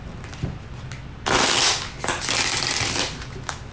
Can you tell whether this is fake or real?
real